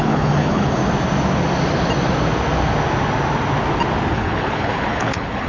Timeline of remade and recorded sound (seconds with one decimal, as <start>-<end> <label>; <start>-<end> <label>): 0.0-0.8 remade; 0.8-4.1 recorded; 4.1-5.5 remade